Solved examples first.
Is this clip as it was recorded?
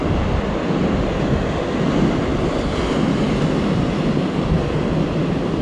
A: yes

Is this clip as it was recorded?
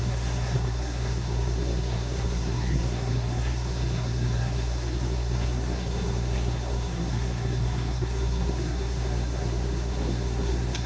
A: no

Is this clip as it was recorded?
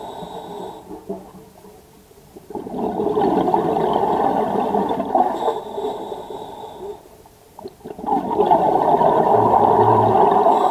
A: yes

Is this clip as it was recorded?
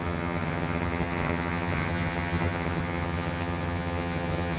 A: no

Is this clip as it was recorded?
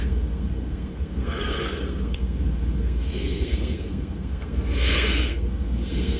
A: no